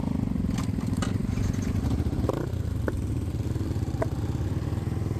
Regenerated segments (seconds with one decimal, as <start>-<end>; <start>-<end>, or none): none